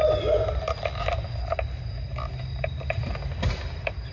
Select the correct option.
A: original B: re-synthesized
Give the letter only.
A